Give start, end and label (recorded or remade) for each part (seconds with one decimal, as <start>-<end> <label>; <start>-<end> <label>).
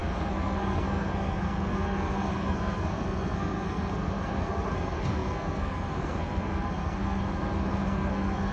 0.0-8.5 remade